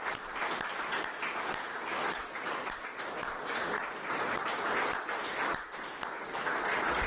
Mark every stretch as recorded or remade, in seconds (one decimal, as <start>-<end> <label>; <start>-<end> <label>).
0.0-2.0 recorded; 2.0-2.5 remade; 2.5-7.1 recorded